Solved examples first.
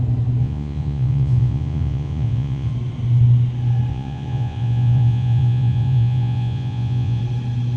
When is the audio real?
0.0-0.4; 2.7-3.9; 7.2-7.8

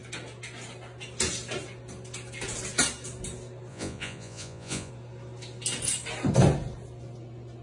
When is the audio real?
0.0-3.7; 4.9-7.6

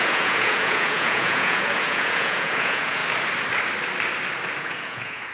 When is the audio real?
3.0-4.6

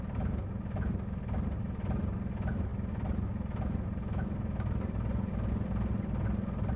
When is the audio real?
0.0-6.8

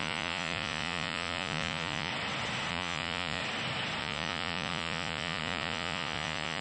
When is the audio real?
2.1-2.7; 3.4-4.0